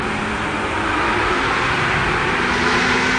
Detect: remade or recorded recorded